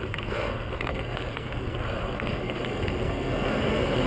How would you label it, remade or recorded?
remade